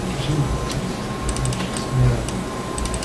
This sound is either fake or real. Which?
real